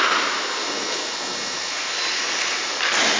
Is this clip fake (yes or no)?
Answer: no